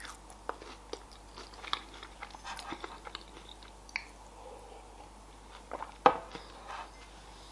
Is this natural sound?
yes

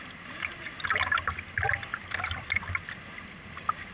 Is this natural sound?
yes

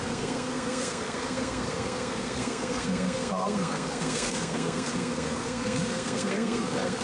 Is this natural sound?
no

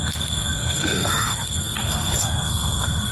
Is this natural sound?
no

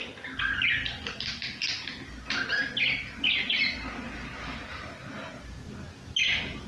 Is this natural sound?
yes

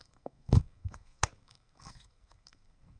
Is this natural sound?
no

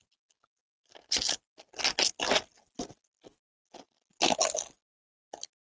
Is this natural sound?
yes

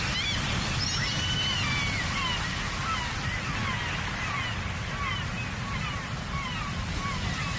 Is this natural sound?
yes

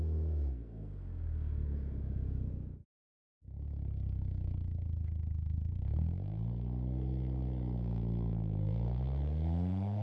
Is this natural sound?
no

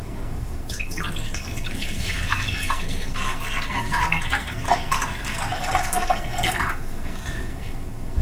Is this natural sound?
no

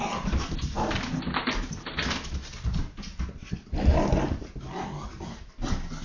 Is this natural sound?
yes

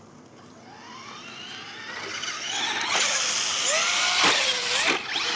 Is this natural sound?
yes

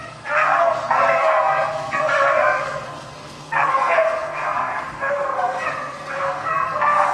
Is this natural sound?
no